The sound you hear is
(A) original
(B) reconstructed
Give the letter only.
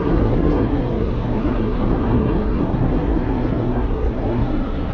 B